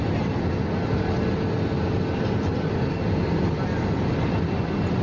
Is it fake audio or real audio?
real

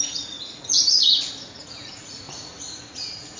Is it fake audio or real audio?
fake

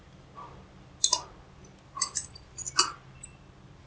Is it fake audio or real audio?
real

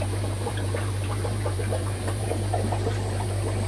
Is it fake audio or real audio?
fake